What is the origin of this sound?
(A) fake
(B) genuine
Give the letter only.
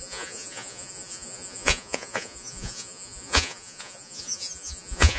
A